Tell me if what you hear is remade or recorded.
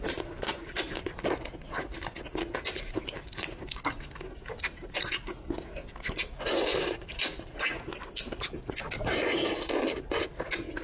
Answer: recorded